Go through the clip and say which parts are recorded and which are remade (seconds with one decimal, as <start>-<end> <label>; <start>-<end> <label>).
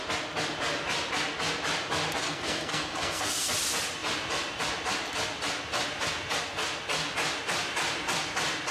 0.0-2.2 recorded; 2.2-3.5 remade; 3.5-8.7 recorded